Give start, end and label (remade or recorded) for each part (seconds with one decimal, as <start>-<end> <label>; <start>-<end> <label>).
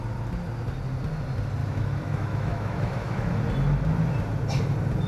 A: 0.0-1.6 recorded; 1.6-3.4 remade; 3.4-5.1 recorded